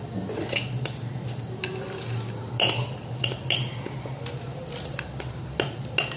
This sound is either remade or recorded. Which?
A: recorded